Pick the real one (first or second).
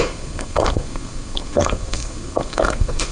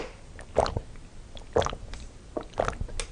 second